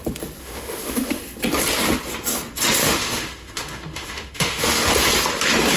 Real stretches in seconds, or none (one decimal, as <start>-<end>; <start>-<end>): 0.0-0.4; 1.2-2.8; 4.9-5.8